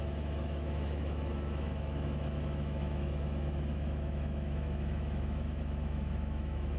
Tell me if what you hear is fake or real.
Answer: fake